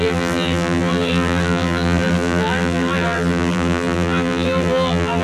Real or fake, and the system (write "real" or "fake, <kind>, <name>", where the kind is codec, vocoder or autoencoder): fake, vocoder, BigVGAN v2